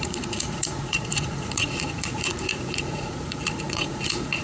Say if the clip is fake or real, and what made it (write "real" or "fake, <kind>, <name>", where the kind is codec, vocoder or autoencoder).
fake, vocoder, Vocos